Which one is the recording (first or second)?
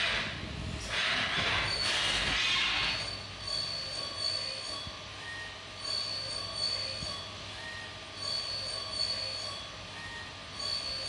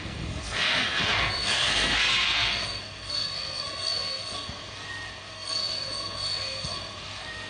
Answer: first